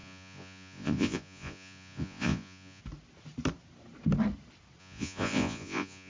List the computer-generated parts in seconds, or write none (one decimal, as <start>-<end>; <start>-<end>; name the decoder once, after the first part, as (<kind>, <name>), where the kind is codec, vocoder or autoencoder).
0.0-2.8 (vocoder, Vocos); 4.8-6.1

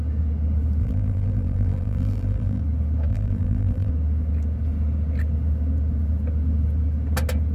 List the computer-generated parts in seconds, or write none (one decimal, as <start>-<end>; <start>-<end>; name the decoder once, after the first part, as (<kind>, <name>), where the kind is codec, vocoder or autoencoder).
0.8-2.6 (vocoder, BigVGAN v2); 3.1-3.9

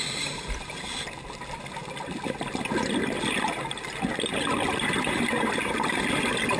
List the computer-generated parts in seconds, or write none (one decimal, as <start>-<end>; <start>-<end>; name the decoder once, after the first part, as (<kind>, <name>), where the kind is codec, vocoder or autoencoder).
none